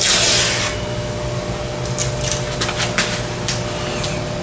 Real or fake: real